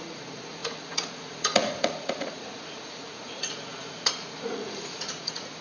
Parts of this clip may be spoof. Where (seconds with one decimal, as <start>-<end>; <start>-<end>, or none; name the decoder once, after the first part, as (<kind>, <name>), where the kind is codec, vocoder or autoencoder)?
0.0-5.6 (vocoder, Vocos)